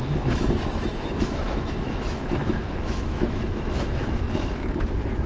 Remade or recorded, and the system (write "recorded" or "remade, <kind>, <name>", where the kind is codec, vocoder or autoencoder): remade, autoencoder, DAC-VAE